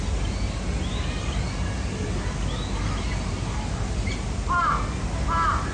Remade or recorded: recorded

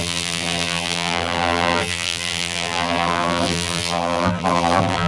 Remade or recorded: remade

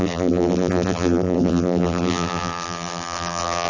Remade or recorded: remade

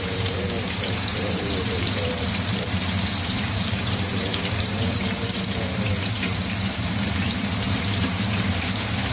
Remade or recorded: remade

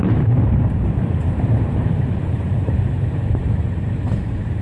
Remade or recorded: remade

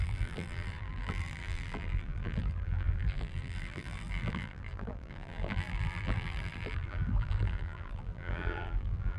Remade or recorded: remade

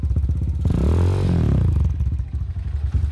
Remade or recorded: recorded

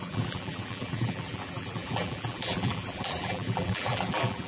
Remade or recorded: remade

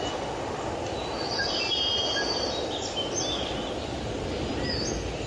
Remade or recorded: remade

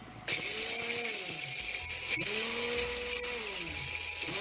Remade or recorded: recorded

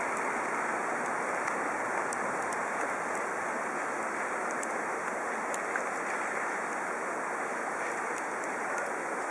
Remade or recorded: recorded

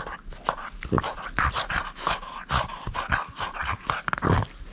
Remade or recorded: recorded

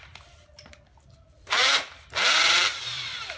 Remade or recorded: remade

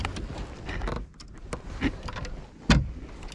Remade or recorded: recorded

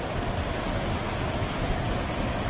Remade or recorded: recorded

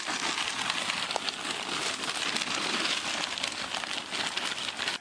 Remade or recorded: recorded